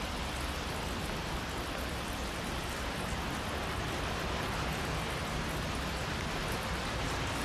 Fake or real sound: real